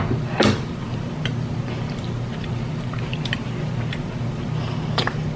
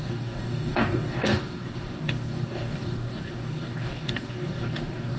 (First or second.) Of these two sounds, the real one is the first